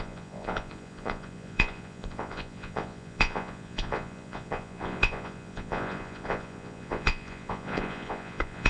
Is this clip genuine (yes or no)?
no